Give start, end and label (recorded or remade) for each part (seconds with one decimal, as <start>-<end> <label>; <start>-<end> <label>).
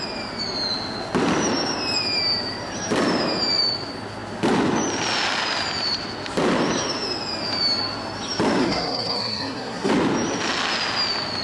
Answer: 0.0-8.6 recorded; 8.6-9.9 remade; 9.9-11.4 recorded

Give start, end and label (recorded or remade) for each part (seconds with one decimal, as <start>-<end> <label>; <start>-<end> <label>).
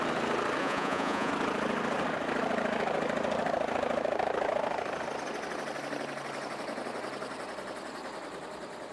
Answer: 0.0-0.6 recorded; 0.6-1.3 remade; 1.3-8.9 recorded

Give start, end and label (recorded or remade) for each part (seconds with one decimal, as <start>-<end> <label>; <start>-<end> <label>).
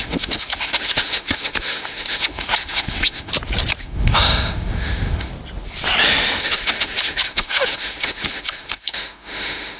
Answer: 0.0-3.3 remade; 3.3-3.8 recorded; 3.8-5.3 remade; 5.3-6.4 recorded; 6.4-9.8 remade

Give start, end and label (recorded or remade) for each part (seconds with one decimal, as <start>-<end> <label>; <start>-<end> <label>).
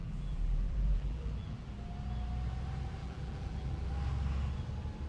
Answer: 0.0-1.7 remade; 1.7-3.0 recorded; 3.0-3.9 remade; 3.9-5.1 recorded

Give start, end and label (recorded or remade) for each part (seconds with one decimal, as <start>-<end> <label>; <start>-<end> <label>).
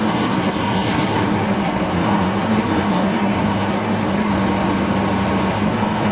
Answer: 0.0-4.3 remade; 4.3-5.5 recorded; 5.5-6.1 remade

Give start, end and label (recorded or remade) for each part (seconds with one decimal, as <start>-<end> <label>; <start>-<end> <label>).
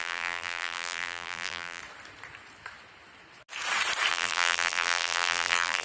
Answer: 0.0-1.8 remade; 1.8-4.1 recorded; 4.1-5.8 remade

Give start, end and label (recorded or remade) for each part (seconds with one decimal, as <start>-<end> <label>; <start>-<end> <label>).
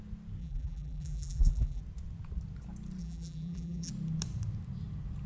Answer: 0.0-0.4 recorded; 0.4-1.8 remade; 1.8-3.0 recorded; 3.0-3.9 remade; 3.9-5.3 recorded